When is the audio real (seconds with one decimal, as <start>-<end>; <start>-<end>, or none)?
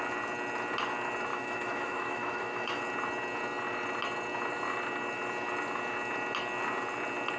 0.0-1.3; 2.8-7.4